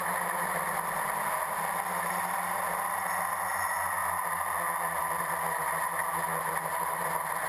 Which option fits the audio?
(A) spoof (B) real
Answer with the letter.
B